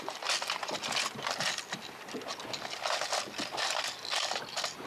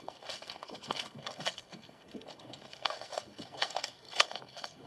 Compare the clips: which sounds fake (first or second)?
second